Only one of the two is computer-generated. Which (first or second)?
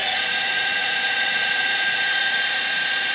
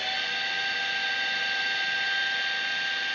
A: first